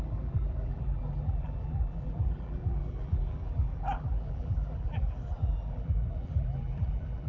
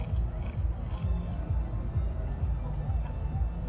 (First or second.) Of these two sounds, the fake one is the first